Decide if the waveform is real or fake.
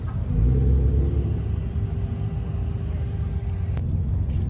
real